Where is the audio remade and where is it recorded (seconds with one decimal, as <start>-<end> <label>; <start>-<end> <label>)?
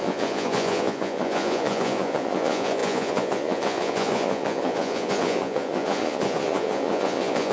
0.0-7.5 remade